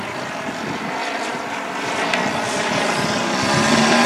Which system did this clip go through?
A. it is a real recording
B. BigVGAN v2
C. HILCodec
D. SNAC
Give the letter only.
A